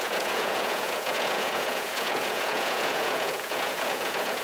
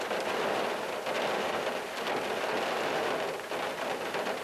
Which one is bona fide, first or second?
second